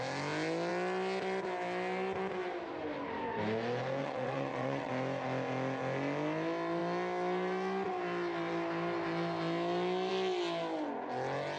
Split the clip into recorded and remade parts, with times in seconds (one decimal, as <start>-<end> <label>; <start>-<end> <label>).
0.0-4.0 recorded; 4.0-4.9 remade; 4.9-11.6 recorded